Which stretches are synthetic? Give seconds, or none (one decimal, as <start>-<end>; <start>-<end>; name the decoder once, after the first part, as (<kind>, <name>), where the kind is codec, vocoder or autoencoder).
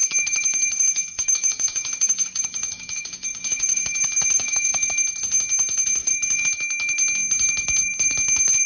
0.0-4.9 (codec, DAC); 6.0-6.5